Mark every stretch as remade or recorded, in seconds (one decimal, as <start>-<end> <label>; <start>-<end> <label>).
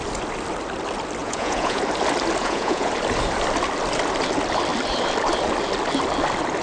0.0-1.2 recorded; 1.2-1.8 remade; 1.8-2.4 recorded; 2.4-2.9 remade; 2.9-6.6 recorded